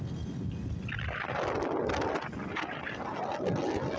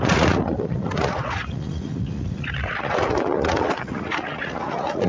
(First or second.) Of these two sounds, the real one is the first